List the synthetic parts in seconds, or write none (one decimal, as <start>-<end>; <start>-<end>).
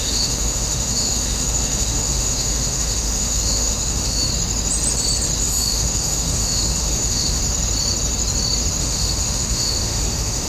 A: 0.0-4.3; 5.4-7.4; 8.8-10.5